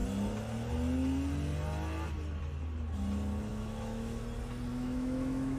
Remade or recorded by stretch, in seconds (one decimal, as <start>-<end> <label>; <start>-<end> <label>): 0.0-3.5 recorded; 3.5-4.2 remade; 4.2-4.7 recorded; 4.7-5.6 remade